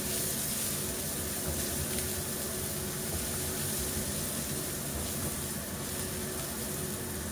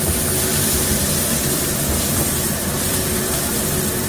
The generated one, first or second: second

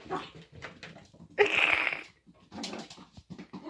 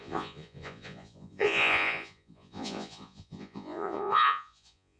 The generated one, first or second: second